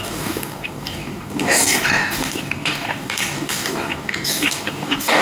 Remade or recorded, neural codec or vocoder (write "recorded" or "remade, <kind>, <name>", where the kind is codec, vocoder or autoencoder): remade, codec, DAC